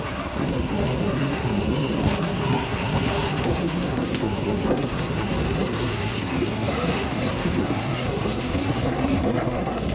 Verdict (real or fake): fake